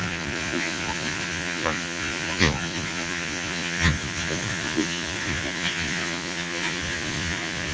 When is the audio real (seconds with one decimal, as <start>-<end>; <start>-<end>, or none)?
none